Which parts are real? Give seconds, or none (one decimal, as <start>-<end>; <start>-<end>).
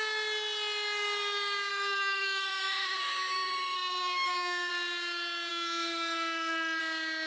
0.0-1.7; 4.7-5.5; 6.8-7.3